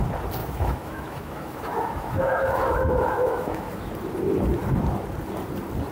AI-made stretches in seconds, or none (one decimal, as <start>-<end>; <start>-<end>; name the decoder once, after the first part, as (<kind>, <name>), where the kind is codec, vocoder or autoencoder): 0.4-3.9 (autoencoder, DAC-VAE)